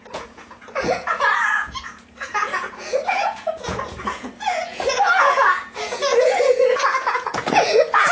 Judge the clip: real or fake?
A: fake